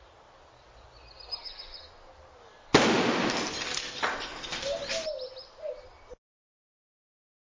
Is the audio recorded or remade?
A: recorded